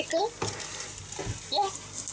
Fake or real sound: real